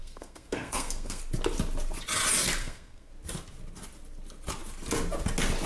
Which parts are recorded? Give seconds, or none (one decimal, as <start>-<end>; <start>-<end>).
1.2-2.6; 3.1-5.7